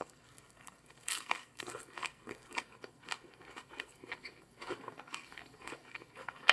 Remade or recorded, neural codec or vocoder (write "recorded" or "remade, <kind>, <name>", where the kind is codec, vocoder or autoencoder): remade, codec, SNAC